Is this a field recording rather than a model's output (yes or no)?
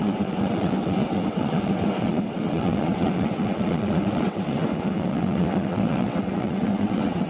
no